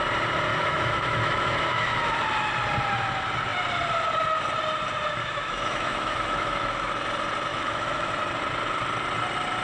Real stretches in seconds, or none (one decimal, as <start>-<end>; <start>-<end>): 0.0-0.5; 2.1-5.2; 6.9-7.5; 8.1-9.6